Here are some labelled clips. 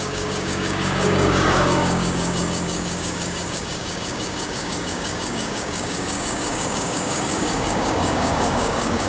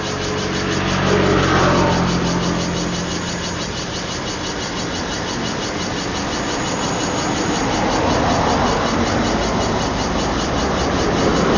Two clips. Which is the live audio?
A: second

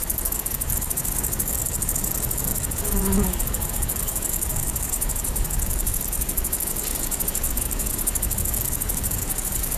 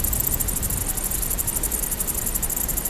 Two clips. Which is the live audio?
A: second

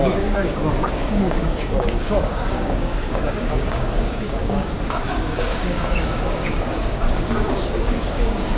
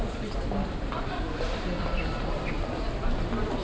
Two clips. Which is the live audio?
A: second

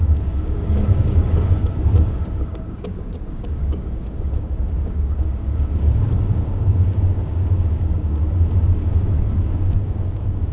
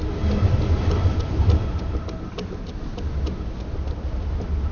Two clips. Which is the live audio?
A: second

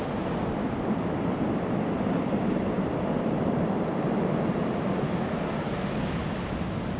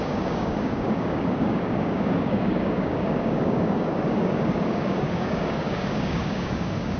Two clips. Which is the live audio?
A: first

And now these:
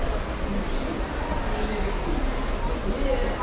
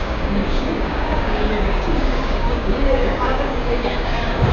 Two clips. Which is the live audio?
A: first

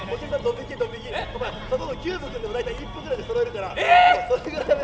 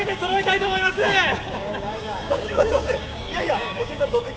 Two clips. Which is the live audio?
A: first